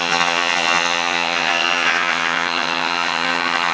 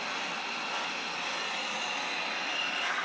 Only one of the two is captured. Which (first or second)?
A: second